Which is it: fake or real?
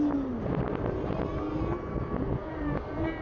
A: real